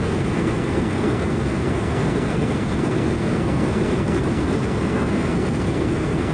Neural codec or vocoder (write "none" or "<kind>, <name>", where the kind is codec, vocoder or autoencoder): codec, SNAC